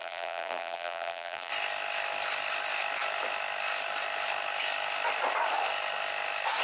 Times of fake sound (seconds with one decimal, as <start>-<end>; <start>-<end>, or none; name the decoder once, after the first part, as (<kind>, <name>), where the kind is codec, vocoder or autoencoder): 0.0-1.5 (vocoder, BigVGAN v2)